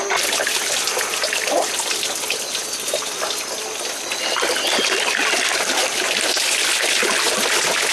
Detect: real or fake real